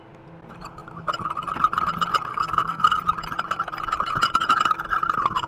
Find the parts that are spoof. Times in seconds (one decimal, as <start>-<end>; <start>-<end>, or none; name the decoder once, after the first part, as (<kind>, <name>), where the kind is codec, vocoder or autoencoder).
2.3-3.0 (codec, SNAC)